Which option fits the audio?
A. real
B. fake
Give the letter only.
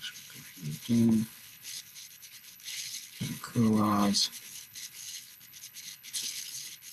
B